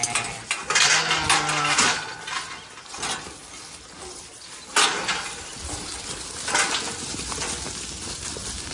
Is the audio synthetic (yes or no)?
no